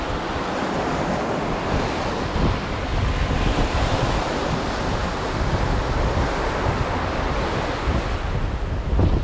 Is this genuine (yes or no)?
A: yes